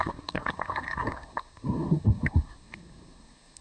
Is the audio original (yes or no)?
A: no